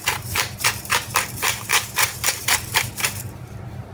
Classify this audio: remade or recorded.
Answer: remade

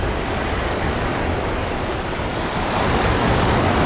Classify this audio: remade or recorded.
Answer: remade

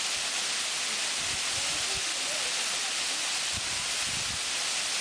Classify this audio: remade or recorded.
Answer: recorded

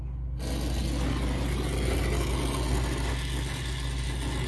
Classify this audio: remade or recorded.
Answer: recorded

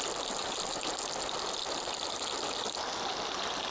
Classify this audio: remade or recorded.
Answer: recorded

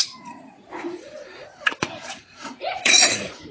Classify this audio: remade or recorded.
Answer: remade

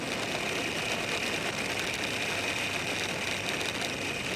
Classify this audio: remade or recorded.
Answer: recorded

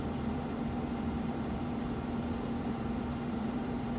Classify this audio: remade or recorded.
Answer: remade